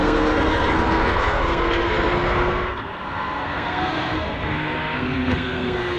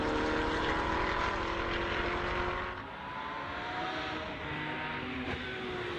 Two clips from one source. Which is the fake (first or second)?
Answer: first